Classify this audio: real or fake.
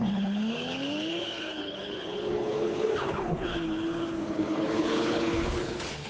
fake